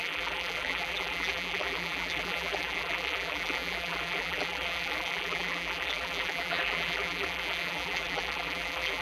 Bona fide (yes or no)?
no